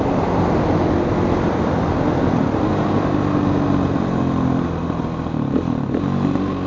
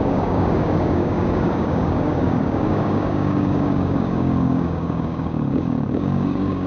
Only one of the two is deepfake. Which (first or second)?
second